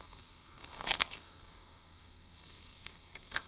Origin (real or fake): fake